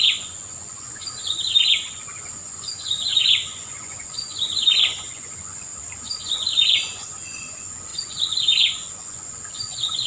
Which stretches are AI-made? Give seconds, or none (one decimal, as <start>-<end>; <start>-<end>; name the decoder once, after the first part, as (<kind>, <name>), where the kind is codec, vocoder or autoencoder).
0.0-5.7 (vocoder, Vocos); 6.2-10.1